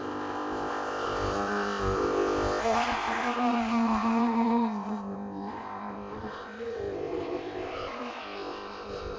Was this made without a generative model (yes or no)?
no